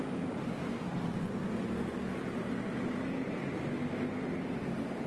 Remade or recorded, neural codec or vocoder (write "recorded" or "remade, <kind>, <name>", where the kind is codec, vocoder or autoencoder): recorded